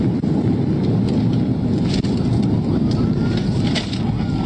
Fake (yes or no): no